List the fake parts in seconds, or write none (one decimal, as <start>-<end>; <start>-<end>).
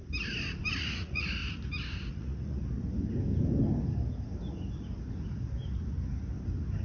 0.8-1.4; 2.1-2.6